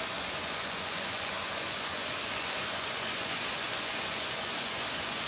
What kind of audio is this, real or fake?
fake